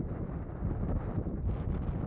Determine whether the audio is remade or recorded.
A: recorded